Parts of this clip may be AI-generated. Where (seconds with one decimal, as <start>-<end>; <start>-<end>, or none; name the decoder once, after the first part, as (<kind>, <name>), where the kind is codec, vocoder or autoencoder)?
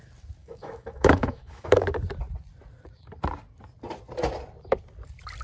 0.4-1.8 (autoencoder, DAC-VAE)